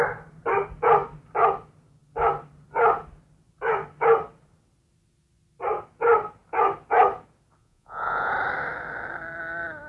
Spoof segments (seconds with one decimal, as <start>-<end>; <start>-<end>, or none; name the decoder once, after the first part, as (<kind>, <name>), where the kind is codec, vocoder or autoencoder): 7.6-8.3 (vocoder, Vocos)

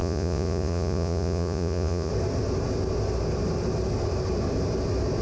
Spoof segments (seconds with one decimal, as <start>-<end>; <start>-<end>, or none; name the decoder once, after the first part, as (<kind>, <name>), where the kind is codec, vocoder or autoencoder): 0.0-2.1 (vocoder, Vocos)